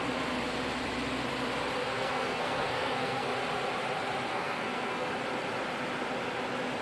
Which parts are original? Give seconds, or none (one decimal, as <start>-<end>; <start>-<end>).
0.0-1.8; 3.3-4.3; 5.1-6.8